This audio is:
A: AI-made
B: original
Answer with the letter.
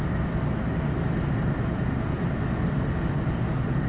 B